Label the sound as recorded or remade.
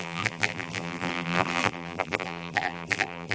remade